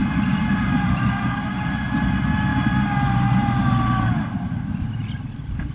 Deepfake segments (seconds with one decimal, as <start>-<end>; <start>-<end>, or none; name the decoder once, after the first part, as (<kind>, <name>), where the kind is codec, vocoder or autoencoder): 0.0-1.5 (vocoder, BigVGAN v2); 2.5-4.6